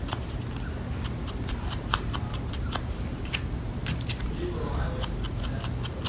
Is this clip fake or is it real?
fake